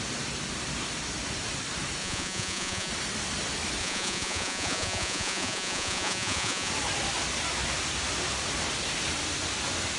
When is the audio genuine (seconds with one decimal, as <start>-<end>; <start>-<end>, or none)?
0.0-2.0; 2.9-3.8; 6.7-10.0